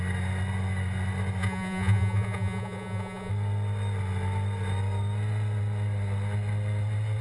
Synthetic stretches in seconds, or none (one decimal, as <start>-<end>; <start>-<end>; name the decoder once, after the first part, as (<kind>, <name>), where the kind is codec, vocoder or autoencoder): 1.4-3.3 (vocoder, Vocos)